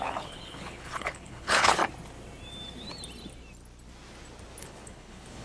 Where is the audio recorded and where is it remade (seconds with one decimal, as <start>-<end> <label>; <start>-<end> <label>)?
0.0-1.8 remade; 1.8-4.6 recorded; 4.6-5.4 remade